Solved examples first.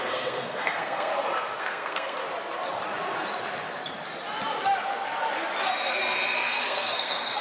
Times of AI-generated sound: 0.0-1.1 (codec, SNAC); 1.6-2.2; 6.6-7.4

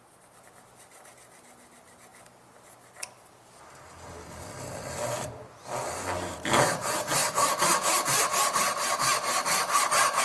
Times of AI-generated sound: 7.2-10.2 (vocoder, BigVGAN v2)

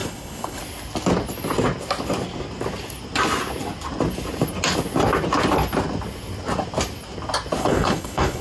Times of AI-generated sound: 0.0-0.6 (codec, HILCodec); 7.6-8.4

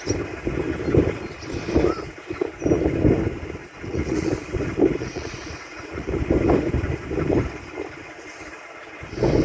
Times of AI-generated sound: 3.6-4.3 (vocoder, Vocos); 5.0-6.1

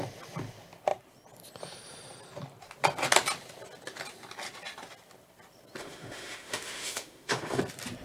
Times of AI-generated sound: 5.8-7.6 (autoencoder, DAC-VAE)

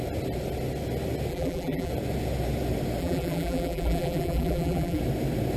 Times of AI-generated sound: 1.3-1.9 (vocoder, BigVGAN v2); 3.0-5.0

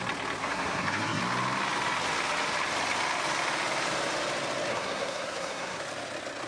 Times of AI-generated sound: 0.4-1.2 (codec, SNAC); 4.7-5.8